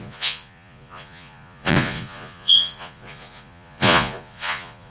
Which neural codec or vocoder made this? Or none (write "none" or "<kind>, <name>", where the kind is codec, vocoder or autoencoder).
vocoder, Vocos